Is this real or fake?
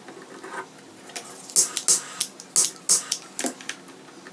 real